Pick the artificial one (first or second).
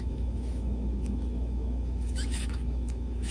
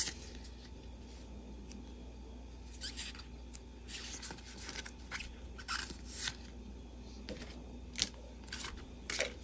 first